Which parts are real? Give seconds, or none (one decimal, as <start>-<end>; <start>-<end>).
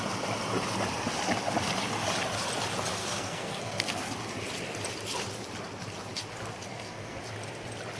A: 0.0-3.0; 4.0-6.7; 7.2-8.0